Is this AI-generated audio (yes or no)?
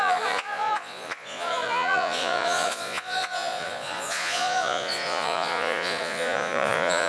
yes